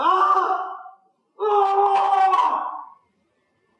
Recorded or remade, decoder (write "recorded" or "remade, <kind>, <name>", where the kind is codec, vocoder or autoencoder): remade, vocoder, BigVGAN v2